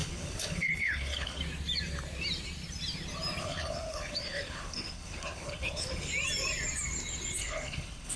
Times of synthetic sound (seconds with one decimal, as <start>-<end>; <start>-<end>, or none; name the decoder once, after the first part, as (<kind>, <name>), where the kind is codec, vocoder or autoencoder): 0.0-1.4 (codec, HILCodec); 3.4-6.1; 7.4-8.2

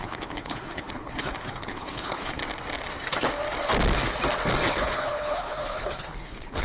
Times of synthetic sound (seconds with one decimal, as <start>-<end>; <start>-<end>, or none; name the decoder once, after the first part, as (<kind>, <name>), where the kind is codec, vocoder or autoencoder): 0.0-2.4 (codec, HILCodec); 4.7-6.6

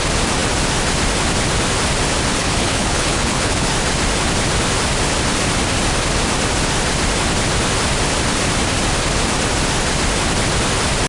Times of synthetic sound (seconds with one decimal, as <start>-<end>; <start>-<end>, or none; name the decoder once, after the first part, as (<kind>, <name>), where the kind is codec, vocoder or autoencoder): 2.4-3.7 (codec, HILCodec)

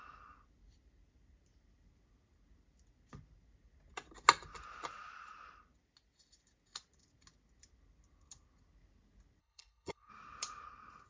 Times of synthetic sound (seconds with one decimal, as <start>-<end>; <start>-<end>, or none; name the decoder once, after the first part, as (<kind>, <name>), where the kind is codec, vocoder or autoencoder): 9.4-10.1 (codec, HILCodec)

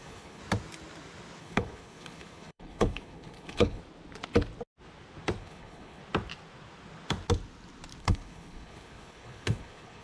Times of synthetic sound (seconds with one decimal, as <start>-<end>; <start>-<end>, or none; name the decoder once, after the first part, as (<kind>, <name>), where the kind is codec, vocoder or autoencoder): 0.0-0.4 (codec, HILCodec); 1.4-3.8; 5.4-6.0; 8.0-10.0

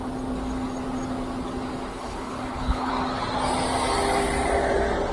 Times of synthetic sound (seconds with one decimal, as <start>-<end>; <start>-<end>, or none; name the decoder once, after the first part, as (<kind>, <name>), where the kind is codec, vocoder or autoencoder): 1.9-2.9 (codec, HILCodec)

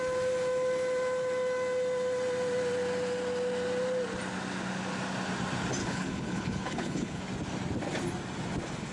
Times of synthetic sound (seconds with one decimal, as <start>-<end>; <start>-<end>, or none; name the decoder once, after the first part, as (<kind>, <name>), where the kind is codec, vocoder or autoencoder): 5.8-7.2 (codec, HILCodec)

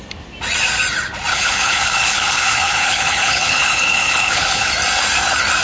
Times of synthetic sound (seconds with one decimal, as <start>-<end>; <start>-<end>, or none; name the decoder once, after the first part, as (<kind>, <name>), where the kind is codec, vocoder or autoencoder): 1.3-4.7 (codec, HILCodec)